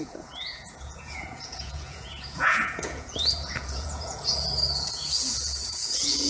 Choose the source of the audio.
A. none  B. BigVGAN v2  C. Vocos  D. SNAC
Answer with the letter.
C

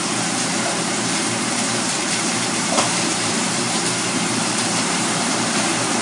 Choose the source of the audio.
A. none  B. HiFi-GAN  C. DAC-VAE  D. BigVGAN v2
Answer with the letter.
D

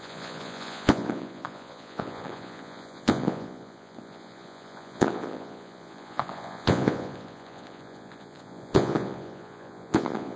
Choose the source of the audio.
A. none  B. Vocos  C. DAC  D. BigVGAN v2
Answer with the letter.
B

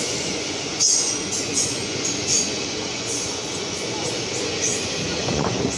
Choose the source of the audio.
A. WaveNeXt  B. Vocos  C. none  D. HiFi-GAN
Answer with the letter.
B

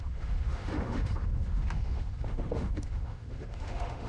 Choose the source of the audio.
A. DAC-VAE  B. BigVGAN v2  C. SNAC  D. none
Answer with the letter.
A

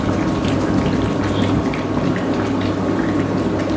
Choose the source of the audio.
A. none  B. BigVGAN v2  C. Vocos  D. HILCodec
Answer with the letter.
A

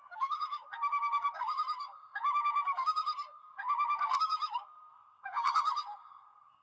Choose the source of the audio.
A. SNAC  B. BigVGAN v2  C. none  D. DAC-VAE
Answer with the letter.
A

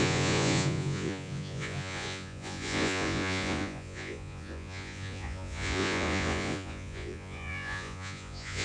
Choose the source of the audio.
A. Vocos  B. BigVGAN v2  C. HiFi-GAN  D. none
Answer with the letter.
A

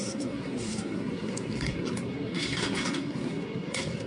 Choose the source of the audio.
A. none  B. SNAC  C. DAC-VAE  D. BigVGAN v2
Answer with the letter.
B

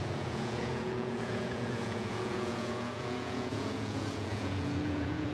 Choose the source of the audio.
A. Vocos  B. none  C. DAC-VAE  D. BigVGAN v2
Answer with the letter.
A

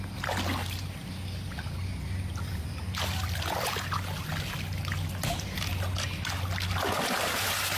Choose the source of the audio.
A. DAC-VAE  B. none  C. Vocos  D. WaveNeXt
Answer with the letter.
B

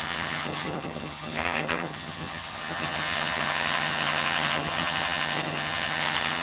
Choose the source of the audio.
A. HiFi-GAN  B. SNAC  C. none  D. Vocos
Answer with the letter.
A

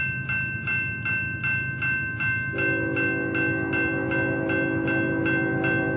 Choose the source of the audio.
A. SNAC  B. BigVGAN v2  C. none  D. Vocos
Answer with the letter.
C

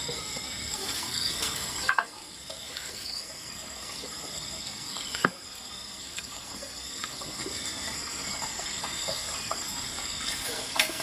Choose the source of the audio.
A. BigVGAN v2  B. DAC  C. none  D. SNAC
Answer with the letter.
D